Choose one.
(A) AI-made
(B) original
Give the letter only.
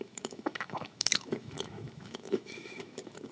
A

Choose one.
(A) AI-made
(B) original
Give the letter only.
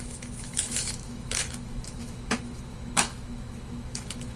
A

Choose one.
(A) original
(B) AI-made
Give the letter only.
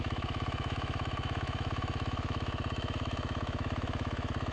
B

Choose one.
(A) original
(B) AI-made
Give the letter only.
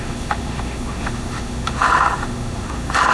B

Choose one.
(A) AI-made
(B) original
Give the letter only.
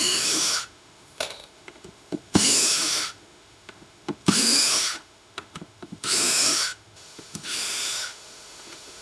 A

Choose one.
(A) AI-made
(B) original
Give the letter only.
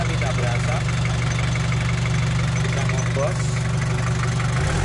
B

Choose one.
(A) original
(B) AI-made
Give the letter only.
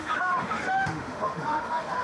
B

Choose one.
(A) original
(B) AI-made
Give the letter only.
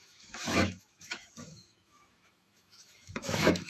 B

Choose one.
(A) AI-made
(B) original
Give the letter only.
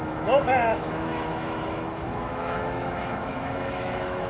A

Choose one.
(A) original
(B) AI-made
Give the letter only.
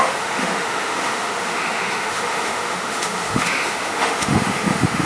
B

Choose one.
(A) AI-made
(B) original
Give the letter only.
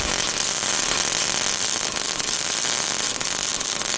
B